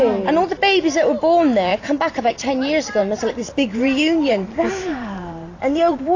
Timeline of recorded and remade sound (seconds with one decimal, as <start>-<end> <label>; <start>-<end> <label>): 0.0-1.7 recorded; 1.7-2.3 remade; 2.3-3.0 recorded; 3.0-6.2 remade